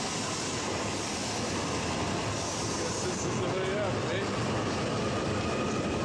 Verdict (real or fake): real